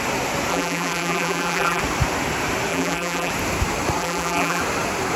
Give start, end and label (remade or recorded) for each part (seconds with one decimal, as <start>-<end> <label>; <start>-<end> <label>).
0.0-0.5 recorded; 0.5-1.8 remade; 1.8-2.7 recorded; 2.7-3.3 remade; 3.3-4.0 recorded; 4.0-4.6 remade; 4.6-5.2 recorded